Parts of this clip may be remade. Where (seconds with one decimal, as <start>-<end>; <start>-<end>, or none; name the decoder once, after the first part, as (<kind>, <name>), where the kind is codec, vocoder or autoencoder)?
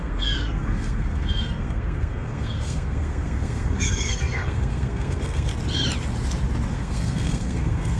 0.0-5.5 (codec, SNAC); 6.7-8.0